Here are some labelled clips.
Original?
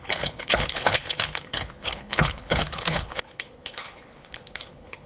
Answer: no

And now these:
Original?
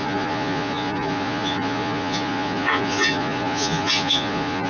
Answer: no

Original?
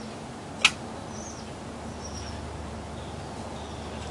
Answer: yes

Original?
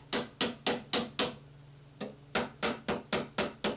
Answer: yes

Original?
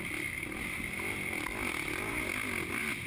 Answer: yes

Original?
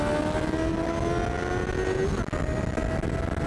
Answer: yes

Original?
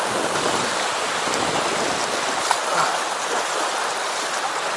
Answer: yes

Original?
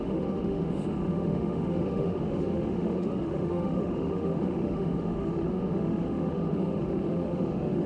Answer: no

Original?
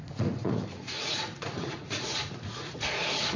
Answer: no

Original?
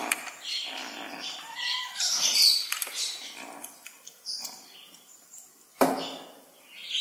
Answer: yes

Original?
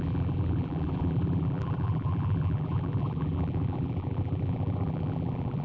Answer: no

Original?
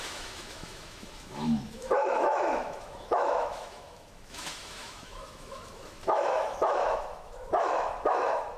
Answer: no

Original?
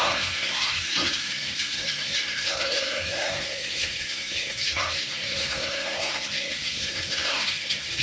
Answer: no